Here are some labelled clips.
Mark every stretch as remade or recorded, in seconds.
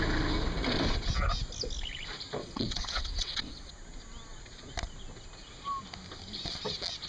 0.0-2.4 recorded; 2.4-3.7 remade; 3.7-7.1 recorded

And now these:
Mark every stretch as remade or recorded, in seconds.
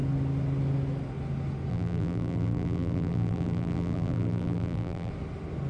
0.0-1.7 recorded; 1.7-5.1 remade; 5.1-5.7 recorded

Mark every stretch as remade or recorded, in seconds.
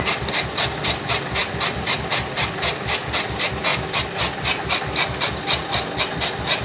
0.0-6.6 recorded